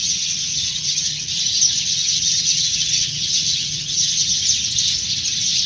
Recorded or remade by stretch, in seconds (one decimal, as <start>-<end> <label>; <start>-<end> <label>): 0.0-1.3 remade; 1.3-1.9 recorded; 1.9-4.3 remade; 4.3-5.7 recorded